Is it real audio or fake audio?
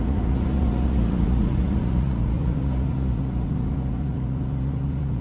fake